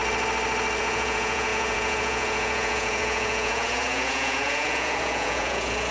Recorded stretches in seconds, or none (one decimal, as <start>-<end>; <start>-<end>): 0.0-0.8